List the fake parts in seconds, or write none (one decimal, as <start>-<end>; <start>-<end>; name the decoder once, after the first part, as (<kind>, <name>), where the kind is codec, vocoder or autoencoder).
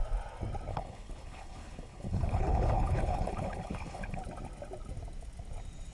0.7-4.2 (codec, HILCodec)